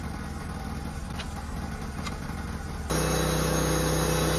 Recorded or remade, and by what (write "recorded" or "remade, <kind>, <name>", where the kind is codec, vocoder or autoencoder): recorded